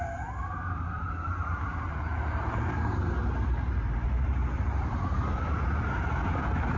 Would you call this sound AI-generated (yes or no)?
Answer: yes